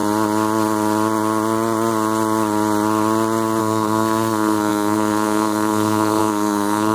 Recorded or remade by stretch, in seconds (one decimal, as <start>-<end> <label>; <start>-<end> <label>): 0.0-3.6 recorded; 3.6-6.9 remade